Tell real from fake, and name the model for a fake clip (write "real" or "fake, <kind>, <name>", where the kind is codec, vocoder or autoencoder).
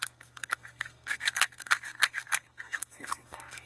fake, codec, SNAC